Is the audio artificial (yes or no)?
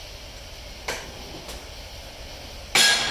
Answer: no